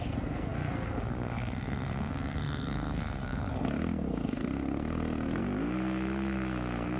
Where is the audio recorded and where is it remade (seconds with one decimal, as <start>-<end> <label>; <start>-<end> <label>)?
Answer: 0.0-7.0 remade